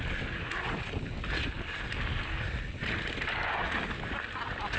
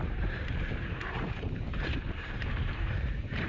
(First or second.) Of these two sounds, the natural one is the first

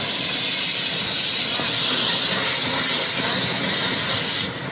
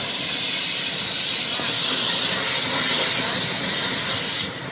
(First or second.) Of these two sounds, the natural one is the first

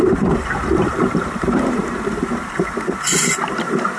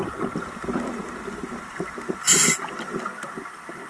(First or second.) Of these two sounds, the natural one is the second